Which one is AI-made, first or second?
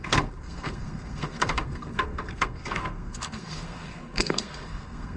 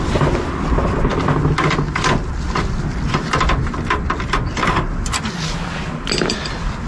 first